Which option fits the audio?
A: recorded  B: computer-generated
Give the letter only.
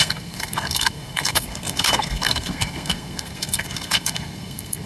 B